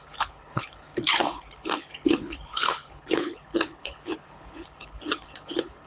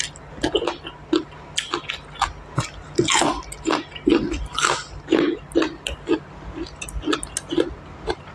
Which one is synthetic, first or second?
first